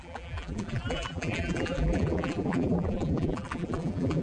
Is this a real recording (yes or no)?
no